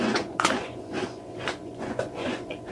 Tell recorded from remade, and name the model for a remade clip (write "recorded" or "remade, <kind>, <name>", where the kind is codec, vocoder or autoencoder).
remade, vocoder, Vocos